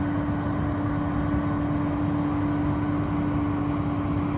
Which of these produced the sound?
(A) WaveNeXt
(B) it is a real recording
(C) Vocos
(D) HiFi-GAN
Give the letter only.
B